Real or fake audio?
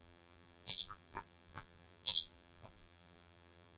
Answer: fake